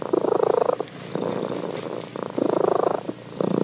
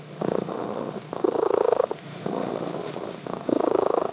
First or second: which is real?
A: first